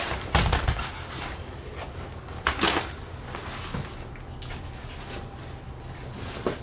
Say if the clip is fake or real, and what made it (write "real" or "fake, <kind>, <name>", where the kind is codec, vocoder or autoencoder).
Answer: real